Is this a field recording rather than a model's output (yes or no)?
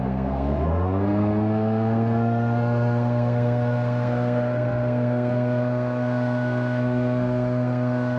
no